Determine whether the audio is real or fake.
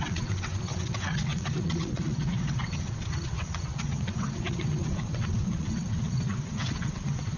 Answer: fake